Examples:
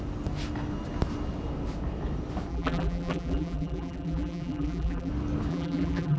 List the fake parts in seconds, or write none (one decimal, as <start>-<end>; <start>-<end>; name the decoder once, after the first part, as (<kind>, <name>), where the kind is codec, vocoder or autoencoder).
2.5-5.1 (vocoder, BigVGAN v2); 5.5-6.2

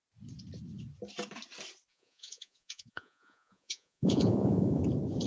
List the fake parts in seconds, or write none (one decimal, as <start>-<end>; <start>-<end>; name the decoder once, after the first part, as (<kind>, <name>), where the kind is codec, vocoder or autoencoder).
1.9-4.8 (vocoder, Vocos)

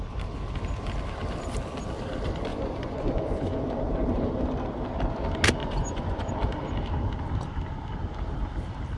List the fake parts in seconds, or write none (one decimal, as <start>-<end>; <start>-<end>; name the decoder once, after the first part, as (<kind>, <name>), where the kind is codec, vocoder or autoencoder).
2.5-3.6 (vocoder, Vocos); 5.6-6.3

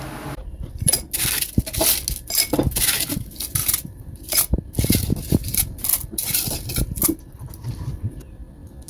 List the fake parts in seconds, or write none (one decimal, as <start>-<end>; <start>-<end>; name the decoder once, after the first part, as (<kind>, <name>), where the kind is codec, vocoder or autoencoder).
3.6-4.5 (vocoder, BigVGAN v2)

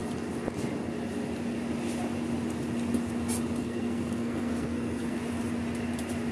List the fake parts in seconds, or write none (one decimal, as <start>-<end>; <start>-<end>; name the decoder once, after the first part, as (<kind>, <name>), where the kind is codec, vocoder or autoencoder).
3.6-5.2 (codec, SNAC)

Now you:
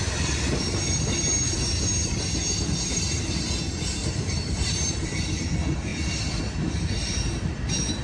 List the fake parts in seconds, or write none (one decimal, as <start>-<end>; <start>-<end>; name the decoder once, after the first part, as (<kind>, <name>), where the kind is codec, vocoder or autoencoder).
2.9-3.5 (vocoder, BigVGAN v2); 4.0-5.2